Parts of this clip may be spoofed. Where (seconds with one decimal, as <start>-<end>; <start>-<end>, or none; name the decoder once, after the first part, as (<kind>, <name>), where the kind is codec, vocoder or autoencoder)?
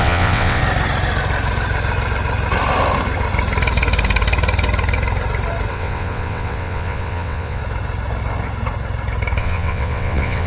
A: 0.0-0.6 (vocoder, WaveNeXt); 5.7-7.6; 9.4-10.5